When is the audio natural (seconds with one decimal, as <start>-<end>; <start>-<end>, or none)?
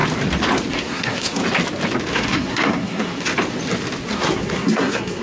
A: 0.0-0.7; 1.4-2.1; 3.3-4.1